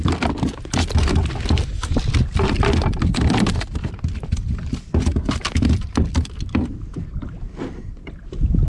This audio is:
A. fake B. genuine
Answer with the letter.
B